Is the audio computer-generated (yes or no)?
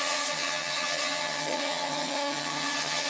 yes